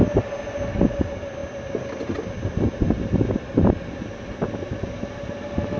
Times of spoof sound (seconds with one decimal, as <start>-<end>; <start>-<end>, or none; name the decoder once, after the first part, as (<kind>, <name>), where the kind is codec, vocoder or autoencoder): none